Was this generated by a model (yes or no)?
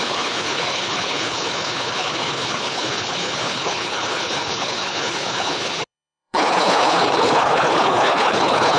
yes